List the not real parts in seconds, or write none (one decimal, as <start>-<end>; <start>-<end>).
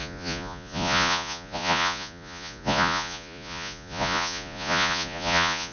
0.0-5.7